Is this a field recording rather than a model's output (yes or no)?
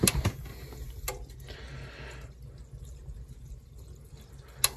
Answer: yes